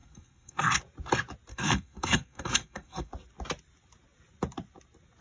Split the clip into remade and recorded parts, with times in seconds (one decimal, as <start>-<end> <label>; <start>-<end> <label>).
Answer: 0.0-0.8 remade; 0.8-1.5 recorded; 1.5-3.1 remade; 3.1-5.2 recorded